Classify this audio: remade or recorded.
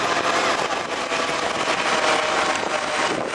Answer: recorded